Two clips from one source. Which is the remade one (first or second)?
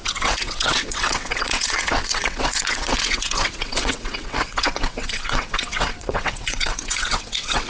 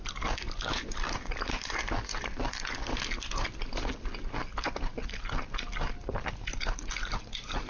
first